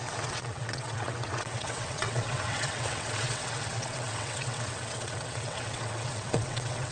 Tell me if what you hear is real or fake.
fake